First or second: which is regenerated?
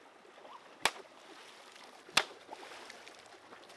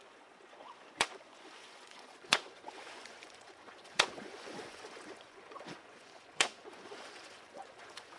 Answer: second